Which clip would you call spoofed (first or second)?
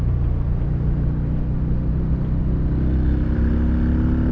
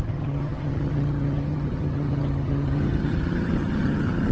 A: second